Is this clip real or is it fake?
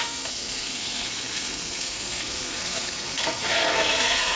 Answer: fake